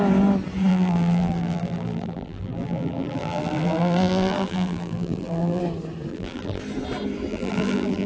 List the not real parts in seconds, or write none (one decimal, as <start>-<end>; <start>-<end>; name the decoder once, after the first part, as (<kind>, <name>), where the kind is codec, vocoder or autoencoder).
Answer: 0.7-5.6 (vocoder, BigVGAN v2); 6.1-6.6; 7.3-8.1